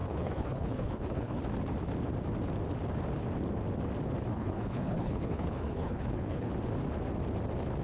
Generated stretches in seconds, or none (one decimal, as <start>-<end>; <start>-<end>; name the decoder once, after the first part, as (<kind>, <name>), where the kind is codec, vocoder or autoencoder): 0.0-1.4 (codec, HILCodec); 4.3-6.5